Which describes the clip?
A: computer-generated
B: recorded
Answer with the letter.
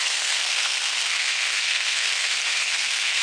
A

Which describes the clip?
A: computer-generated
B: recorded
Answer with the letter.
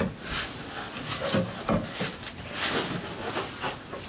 B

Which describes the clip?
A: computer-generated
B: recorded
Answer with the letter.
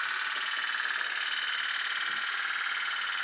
B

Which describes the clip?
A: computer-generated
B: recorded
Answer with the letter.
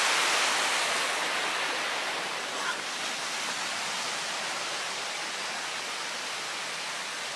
B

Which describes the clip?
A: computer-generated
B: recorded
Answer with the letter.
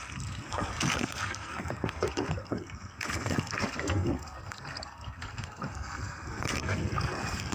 A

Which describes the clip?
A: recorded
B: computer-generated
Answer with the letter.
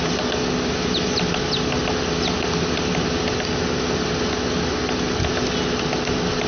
A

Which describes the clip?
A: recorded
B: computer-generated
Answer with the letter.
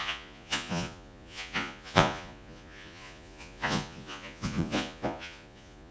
B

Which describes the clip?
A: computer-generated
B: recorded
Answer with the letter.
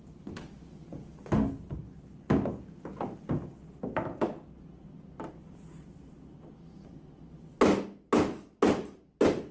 B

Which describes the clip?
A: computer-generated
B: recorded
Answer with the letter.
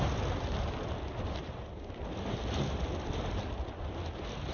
B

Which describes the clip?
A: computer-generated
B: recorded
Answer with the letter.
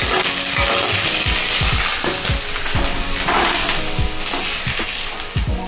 B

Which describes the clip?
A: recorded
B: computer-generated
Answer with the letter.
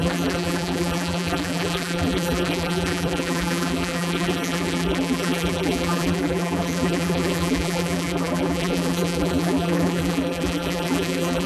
B